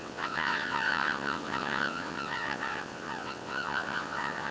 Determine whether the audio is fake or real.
fake